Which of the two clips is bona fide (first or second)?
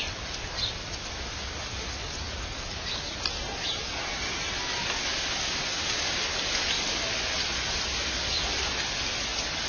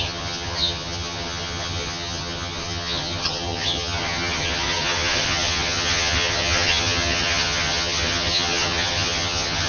first